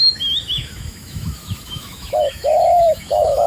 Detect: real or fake fake